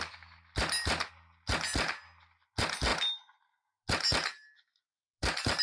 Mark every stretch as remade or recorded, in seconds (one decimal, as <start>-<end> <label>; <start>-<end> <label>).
0.0-5.6 recorded